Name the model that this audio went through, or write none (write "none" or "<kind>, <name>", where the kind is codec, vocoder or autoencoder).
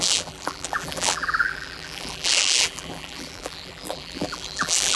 vocoder, BigVGAN v2